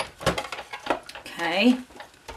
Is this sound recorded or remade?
recorded